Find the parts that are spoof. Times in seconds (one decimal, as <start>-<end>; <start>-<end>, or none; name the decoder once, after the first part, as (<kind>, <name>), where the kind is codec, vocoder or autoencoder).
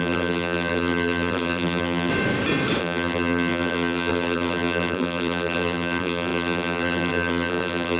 0.0-2.1 (vocoder, BigVGAN v2); 2.8-8.0